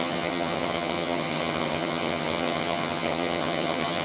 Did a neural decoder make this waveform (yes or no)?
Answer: yes